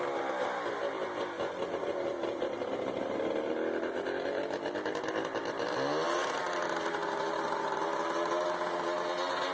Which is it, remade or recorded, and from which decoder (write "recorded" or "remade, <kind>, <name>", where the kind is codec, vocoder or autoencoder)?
recorded